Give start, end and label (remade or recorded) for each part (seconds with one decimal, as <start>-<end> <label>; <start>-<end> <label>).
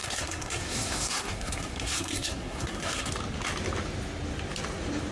0.0-3.1 remade; 3.1-5.1 recorded